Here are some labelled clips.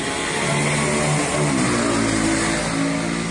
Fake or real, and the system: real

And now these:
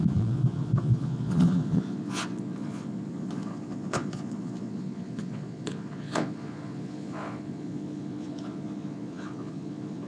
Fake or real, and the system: fake, vocoder, Vocos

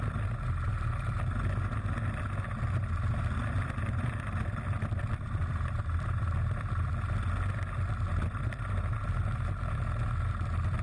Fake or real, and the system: fake, vocoder, BigVGAN v2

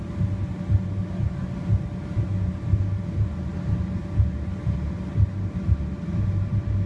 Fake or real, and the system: real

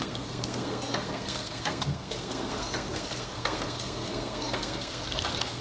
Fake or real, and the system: fake, codec, SNAC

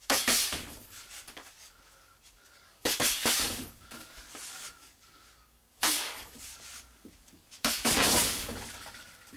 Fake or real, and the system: fake, codec, DAC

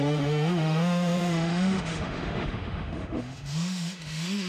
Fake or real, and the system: fake, autoencoder, DAC-VAE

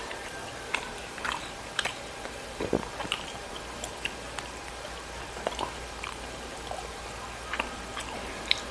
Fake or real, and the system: fake, vocoder, BigVGAN v2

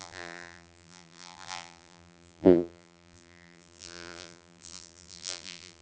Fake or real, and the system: fake, vocoder, BigVGAN v2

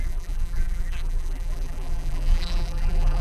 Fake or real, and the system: fake, vocoder, BigVGAN v2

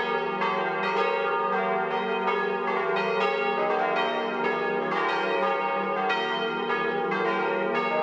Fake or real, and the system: real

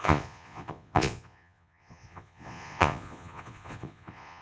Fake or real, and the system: fake, vocoder, Vocos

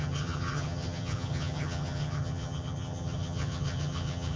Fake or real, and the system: fake, vocoder, HiFi-GAN